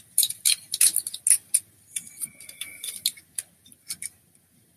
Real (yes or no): yes